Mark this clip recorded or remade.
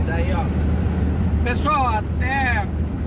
recorded